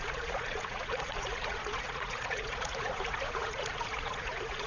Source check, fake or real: fake